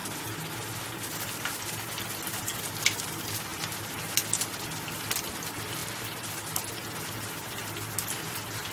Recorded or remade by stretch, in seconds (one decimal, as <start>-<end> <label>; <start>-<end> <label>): 0.0-8.7 recorded

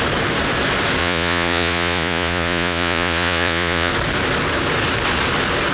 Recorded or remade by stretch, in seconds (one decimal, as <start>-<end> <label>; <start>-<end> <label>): 0.0-1.0 recorded; 1.0-3.9 remade; 3.9-5.7 recorded

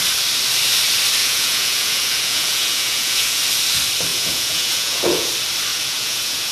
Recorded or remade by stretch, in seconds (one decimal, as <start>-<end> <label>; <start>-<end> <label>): 0.0-1.2 recorded; 1.2-3.4 remade; 3.4-4.1 recorded; 4.1-5.3 remade; 5.3-5.7 recorded; 5.7-6.5 remade

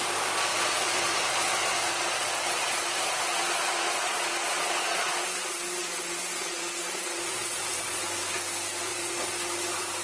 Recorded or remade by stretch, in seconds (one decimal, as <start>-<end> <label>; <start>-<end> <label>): 0.0-0.5 recorded; 0.5-5.1 remade; 5.1-5.8 recorded; 5.8-8.0 remade; 8.0-8.9 recorded; 8.9-9.4 remade; 9.4-10.0 recorded

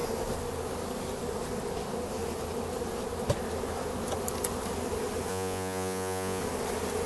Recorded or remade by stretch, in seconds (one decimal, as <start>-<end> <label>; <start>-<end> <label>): 0.0-5.3 recorded; 5.3-6.4 remade; 6.4-7.1 recorded